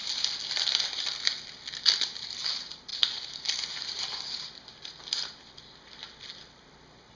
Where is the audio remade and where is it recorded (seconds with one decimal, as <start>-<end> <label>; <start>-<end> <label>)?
0.0-7.2 recorded